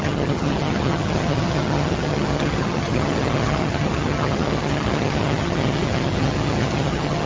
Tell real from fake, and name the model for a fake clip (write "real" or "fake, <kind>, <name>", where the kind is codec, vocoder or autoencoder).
fake, vocoder, HiFi-GAN